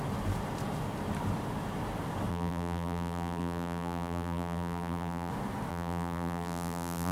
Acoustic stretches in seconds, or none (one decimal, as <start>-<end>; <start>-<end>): 0.0-2.3; 5.3-5.7